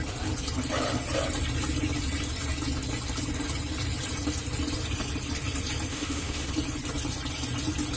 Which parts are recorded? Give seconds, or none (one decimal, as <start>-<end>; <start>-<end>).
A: 0.0-5.9; 6.5-8.0